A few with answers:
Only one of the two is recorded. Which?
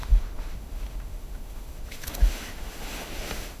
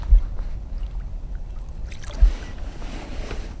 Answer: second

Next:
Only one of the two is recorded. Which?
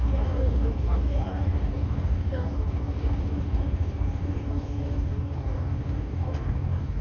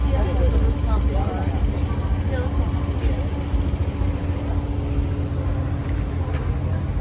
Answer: second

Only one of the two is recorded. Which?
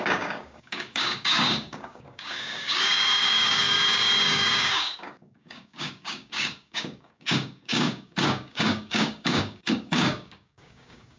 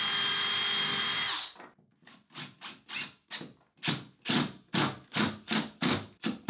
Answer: second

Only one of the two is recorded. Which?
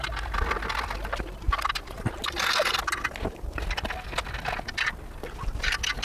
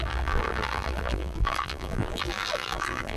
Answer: first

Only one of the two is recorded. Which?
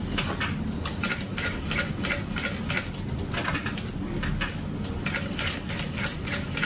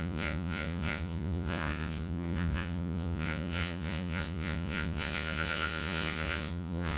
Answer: first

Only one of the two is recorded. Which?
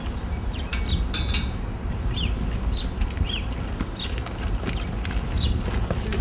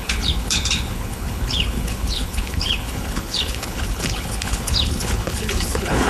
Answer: first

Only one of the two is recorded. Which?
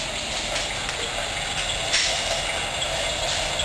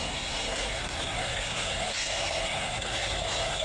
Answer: first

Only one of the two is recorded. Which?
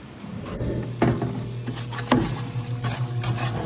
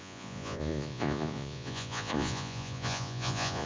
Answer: first